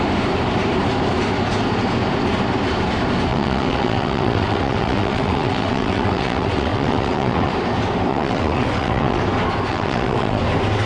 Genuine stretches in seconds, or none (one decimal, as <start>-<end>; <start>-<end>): 0.0-3.3; 7.5-8.1; 9.2-9.7; 10.4-10.9